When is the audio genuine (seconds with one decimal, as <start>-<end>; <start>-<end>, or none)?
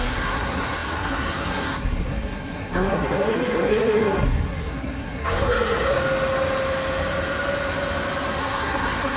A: 6.0-8.4